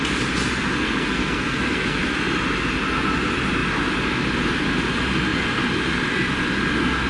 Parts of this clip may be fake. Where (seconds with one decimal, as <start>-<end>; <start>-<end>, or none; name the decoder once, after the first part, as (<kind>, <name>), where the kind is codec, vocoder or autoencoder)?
0.7-2.0 (codec, SNAC)